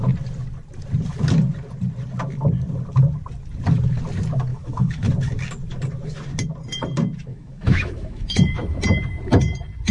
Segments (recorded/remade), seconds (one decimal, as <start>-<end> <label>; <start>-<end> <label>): 0.0-4.5 recorded; 4.5-5.1 remade; 5.1-7.3 recorded; 7.3-8.8 remade; 8.8-9.9 recorded